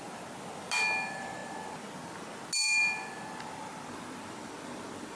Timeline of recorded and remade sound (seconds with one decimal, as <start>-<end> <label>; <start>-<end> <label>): 0.0-5.2 recorded

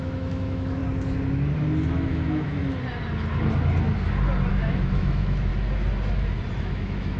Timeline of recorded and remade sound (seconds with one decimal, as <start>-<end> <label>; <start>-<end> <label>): 0.0-0.8 remade; 0.8-1.9 recorded; 1.9-2.6 remade; 2.6-4.5 recorded; 4.5-5.5 remade; 5.5-6.6 recorded; 6.6-7.2 remade

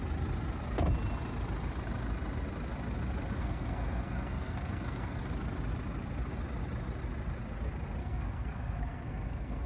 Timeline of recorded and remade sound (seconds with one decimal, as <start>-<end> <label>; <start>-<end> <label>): 0.0-3.4 recorded; 3.4-5.2 remade; 5.2-8.0 recorded; 8.0-9.7 remade

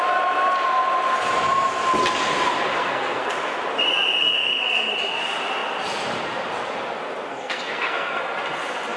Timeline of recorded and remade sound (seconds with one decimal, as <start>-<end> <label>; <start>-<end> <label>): 0.0-2.7 recorded; 2.7-3.3 remade; 3.3-4.2 recorded; 4.2-4.9 remade; 4.9-7.3 recorded; 7.3-8.2 remade; 8.2-9.0 recorded

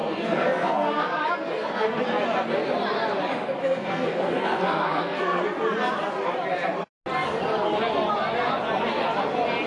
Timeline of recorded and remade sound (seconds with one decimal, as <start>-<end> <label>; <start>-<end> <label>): 0.0-2.0 remade; 2.0-3.6 recorded; 3.6-5.4 remade; 5.4-9.7 recorded

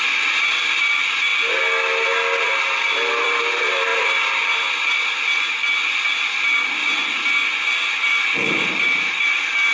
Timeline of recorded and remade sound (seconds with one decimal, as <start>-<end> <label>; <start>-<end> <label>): 0.0-1.3 remade; 1.3-3.2 recorded; 3.2-3.9 remade; 3.9-7.9 recorded; 7.9-9.7 remade

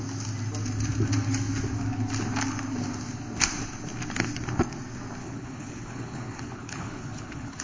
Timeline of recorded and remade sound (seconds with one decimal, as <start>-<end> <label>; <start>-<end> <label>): 0.0-5.2 recorded; 5.2-7.6 remade

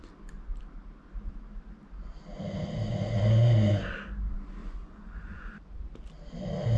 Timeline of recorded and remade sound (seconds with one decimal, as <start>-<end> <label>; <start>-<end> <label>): 0.0-4.6 recorded; 4.6-5.5 remade; 5.5-6.8 recorded